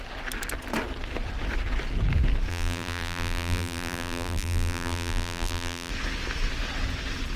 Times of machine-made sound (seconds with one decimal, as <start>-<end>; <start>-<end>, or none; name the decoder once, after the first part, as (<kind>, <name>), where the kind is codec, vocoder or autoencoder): 2.5-5.9 (vocoder, BigVGAN v2)